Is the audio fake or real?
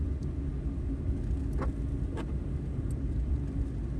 real